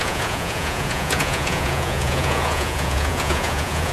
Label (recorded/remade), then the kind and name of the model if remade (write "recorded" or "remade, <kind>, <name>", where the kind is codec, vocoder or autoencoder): remade, vocoder, Vocos